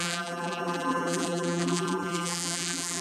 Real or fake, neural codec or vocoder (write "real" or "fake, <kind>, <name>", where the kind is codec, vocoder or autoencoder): fake, vocoder, BigVGAN v2